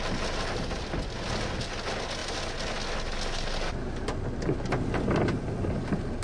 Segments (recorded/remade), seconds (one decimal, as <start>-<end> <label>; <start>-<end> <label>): 0.0-6.2 recorded